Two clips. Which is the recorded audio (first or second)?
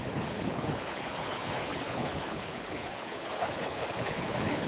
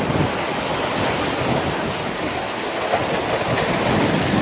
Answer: second